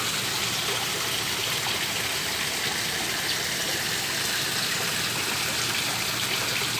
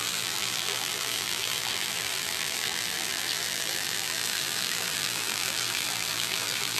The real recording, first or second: first